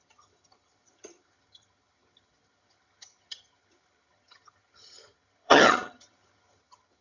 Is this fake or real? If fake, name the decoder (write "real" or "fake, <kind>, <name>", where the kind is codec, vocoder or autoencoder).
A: fake, vocoder, HiFi-GAN